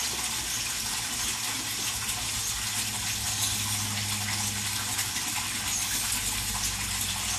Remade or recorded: recorded